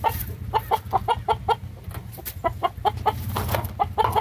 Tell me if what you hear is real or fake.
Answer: real